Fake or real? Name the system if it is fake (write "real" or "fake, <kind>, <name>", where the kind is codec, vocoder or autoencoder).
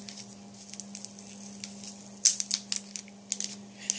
real